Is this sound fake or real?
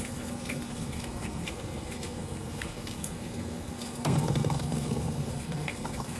fake